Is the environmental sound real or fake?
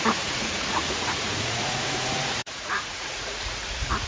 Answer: fake